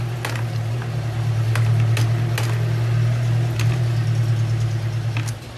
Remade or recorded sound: recorded